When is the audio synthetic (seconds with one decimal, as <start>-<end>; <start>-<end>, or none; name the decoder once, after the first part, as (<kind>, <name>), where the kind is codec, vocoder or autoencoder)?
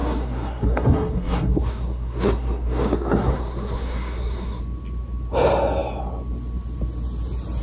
0.0-4.6 (codec, SNAC)